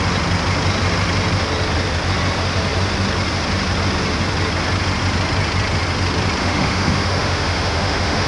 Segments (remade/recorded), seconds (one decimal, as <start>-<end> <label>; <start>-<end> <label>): 0.0-6.4 recorded; 6.4-8.3 remade